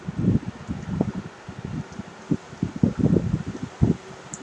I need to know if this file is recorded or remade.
recorded